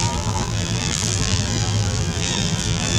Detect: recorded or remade remade